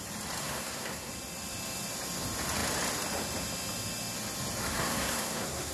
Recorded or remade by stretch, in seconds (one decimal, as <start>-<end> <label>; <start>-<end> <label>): 0.0-0.4 recorded; 0.4-1.1 remade; 1.1-4.7 recorded; 4.7-5.7 remade